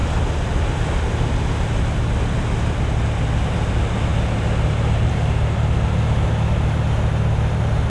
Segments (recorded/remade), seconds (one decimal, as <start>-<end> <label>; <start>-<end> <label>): 0.0-7.9 recorded